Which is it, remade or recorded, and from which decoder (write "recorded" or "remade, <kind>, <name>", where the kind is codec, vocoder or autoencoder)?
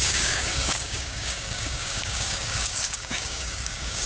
remade, codec, DAC